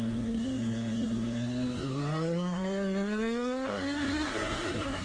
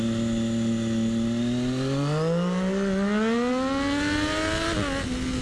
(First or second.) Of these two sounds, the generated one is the first